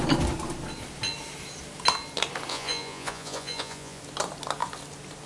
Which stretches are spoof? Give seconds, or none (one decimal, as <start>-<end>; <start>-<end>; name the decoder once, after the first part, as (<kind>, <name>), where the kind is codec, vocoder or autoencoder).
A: 2.5-4.0 (vocoder, Vocos)